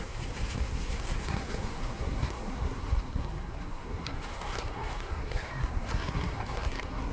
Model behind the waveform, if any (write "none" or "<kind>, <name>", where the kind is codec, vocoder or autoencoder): codec, SNAC